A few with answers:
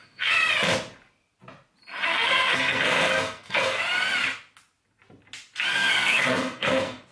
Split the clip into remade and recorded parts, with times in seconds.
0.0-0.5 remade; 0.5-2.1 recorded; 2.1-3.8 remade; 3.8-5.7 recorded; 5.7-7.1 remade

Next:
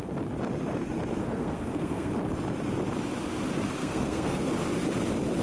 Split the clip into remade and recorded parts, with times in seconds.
0.0-1.2 recorded; 1.2-2.1 remade; 2.1-3.8 recorded; 3.8-4.5 remade; 4.5-5.4 recorded

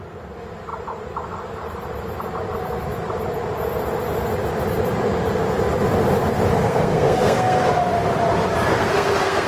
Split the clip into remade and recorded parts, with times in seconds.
0.0-6.5 recorded; 6.5-7.7 remade; 7.7-8.7 recorded; 8.7-9.5 remade